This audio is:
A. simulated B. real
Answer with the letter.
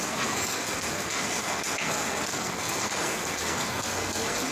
A